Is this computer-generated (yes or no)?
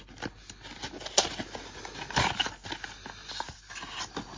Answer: no